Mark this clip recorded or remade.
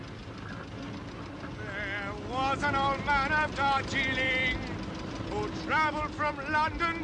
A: recorded